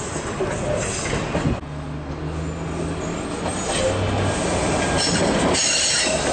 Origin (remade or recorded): recorded